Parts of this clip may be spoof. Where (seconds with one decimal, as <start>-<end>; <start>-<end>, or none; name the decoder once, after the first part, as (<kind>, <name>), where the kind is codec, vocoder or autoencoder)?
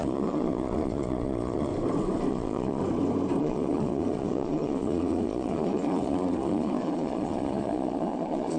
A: 0.0-1.7 (vocoder, Vocos); 2.3-2.8; 3.4-8.6